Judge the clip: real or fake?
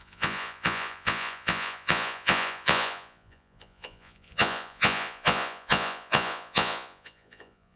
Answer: fake